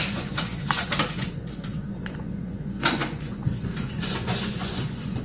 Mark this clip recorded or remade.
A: remade